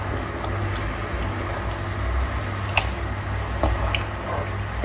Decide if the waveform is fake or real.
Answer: real